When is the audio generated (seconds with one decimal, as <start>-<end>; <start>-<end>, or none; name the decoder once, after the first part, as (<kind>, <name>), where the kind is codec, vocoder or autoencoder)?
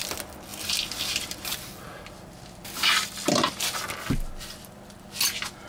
0.5-1.7 (vocoder, BigVGAN v2)